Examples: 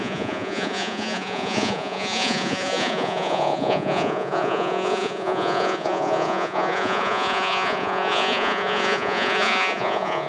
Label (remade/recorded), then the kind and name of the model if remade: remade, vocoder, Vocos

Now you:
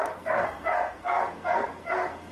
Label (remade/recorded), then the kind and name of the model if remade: remade, codec, SNAC